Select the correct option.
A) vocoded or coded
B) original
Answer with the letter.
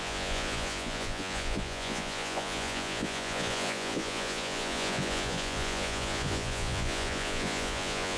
A